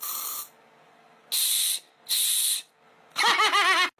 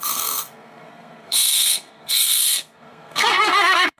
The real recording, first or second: first